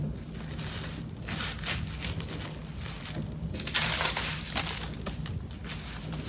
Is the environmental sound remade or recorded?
recorded